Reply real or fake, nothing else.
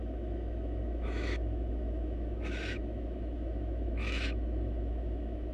fake